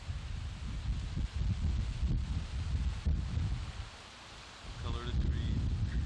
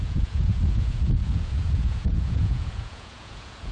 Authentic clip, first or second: first